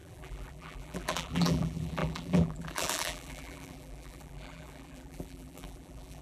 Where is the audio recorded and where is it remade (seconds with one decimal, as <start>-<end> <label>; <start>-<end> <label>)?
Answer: 0.0-6.2 remade